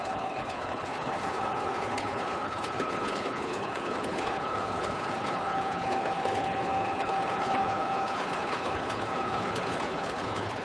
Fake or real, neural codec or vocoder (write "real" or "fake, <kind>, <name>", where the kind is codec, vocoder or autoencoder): fake, codec, HILCodec